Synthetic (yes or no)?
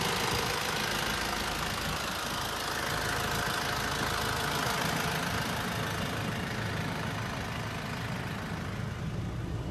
no